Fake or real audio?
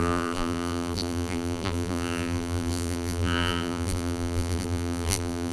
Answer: fake